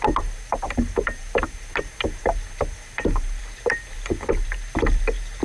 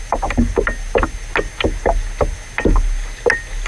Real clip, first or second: second